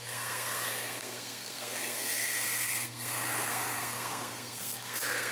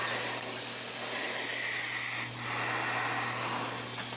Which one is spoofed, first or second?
first